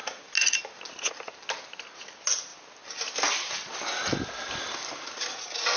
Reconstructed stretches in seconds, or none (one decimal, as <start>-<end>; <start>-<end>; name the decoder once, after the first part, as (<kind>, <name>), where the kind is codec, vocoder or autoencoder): none